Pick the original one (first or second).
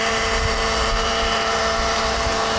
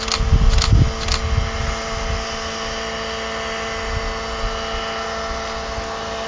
second